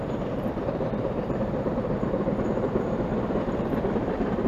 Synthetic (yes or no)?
yes